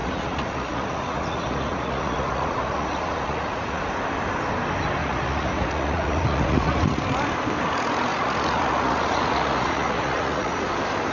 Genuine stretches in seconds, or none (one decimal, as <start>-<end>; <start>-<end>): 3.8-5.0; 7.0-8.1; 10.7-11.1